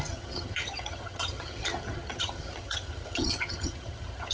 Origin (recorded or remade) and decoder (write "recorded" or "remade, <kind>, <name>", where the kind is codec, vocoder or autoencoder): remade, vocoder, HiFi-GAN